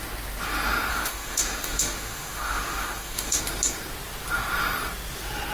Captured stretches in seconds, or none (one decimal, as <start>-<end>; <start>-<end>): 0.0-0.9; 3.4-5.5

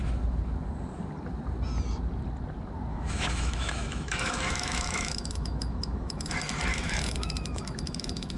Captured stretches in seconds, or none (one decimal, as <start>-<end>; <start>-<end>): 0.0-2.9; 6.3-6.7

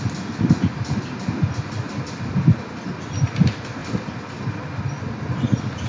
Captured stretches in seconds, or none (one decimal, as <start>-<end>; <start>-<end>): 0.0-5.9

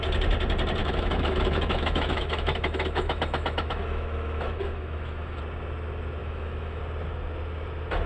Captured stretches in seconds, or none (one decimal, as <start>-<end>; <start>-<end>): 0.0-0.8; 5.4-6.2; 6.8-8.1

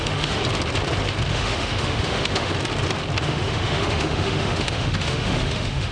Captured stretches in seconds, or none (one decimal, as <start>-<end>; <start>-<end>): 0.4-1.3; 2.5-3.2

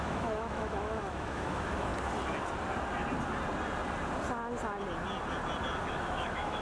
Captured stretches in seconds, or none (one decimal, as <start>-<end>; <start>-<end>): 1.9-5.9

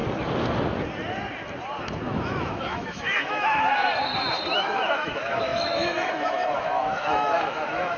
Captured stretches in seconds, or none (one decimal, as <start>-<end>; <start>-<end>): 0.0-1.8; 3.9-4.5

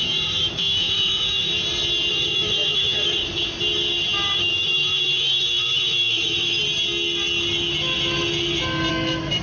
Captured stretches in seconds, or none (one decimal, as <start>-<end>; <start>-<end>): 1.5-2.1; 3.2-4.4; 6.6-8.9